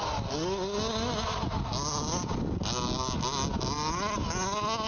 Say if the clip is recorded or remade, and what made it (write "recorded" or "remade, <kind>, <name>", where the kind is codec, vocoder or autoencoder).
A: recorded